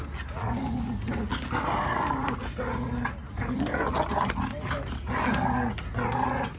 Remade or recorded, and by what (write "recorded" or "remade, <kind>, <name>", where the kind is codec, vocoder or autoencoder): recorded